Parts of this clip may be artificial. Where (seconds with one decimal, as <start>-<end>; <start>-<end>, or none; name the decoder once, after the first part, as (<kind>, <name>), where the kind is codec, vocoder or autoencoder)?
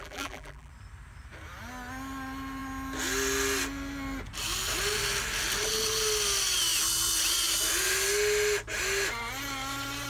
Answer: 0.0-0.7 (vocoder, BigVGAN v2)